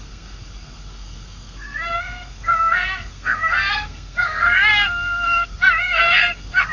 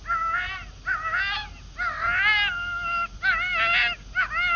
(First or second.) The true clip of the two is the second